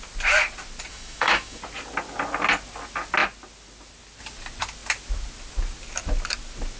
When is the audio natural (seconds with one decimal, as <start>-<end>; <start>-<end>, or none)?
0.0-0.9; 1.6-6.8